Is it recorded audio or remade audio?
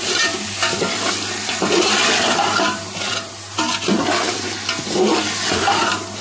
recorded